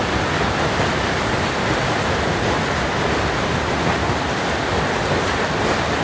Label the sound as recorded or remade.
recorded